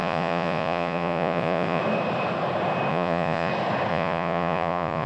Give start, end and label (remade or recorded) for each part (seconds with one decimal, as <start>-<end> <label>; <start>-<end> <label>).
0.0-1.8 remade; 1.8-2.9 recorded; 2.9-3.5 remade; 3.5-3.9 recorded; 3.9-5.1 remade

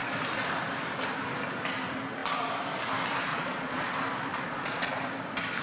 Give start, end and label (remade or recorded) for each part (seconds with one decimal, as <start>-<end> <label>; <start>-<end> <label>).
0.0-3.3 recorded; 3.3-3.9 remade; 3.9-4.3 recorded; 4.3-4.9 remade; 4.9-5.6 recorded

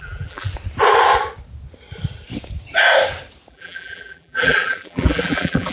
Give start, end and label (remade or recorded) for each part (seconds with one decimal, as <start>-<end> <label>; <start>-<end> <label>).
0.0-0.5 remade; 0.5-3.5 recorded; 3.5-5.7 remade